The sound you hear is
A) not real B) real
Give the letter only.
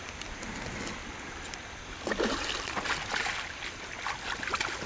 B